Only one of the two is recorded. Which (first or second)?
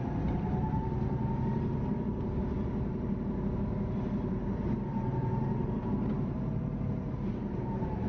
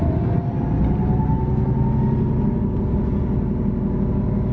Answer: second